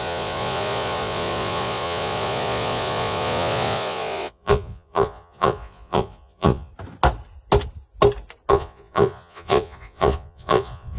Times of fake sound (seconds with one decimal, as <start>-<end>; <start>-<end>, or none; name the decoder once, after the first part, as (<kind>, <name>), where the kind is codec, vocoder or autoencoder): 0.0-6.7 (vocoder, Vocos); 8.5-11.0